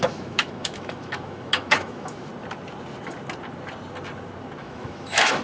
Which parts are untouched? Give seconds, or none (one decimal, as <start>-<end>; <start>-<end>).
2.3-4.6